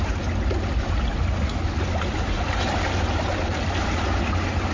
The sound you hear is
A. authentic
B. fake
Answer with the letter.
A